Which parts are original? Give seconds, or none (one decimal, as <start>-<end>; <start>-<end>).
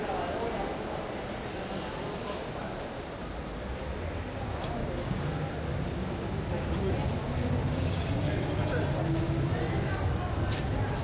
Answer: 0.0-4.8; 5.3-7.6; 8.3-11.0